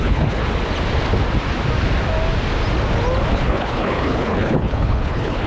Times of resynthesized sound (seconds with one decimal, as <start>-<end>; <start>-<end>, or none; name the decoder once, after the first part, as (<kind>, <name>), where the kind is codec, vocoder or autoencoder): 0.0-0.4 (codec, HILCodec); 3.3-5.5